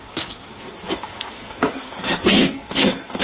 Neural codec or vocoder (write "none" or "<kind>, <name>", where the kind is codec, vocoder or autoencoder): codec, SNAC